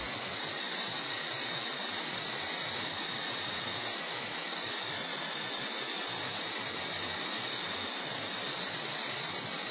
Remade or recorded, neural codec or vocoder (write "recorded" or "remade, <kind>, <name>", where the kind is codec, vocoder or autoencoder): recorded